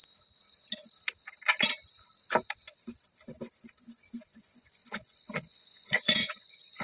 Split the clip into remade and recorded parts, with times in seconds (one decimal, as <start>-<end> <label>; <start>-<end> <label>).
0.0-4.3 recorded; 4.3-6.8 remade